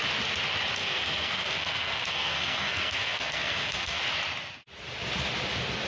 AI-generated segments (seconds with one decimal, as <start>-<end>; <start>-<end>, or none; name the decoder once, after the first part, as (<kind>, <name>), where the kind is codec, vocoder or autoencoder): 0.8-4.0 (codec, SNAC)